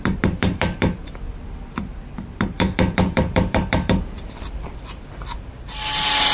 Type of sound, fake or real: fake